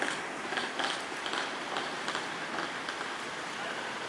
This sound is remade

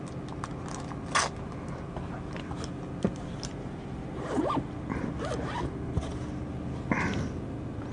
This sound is recorded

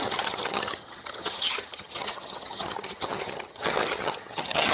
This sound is remade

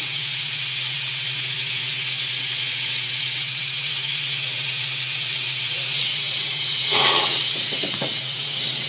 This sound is remade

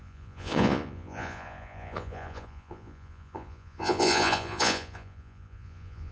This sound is remade